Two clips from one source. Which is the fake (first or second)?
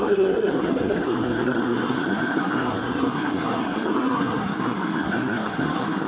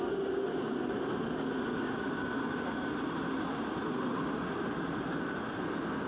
first